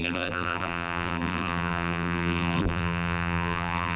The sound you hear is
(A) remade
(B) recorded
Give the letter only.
A